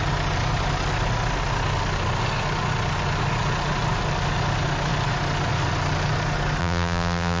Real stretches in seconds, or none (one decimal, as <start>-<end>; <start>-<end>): 0.0-6.6